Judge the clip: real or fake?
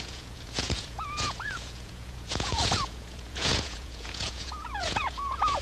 fake